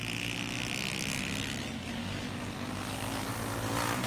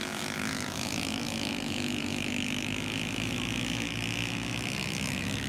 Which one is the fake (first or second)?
second